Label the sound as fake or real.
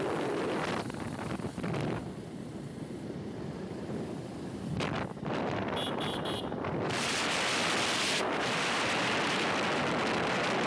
real